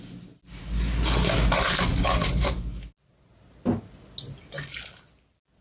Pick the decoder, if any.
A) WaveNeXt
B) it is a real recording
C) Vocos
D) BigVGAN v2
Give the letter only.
B